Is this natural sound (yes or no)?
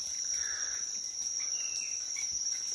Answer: no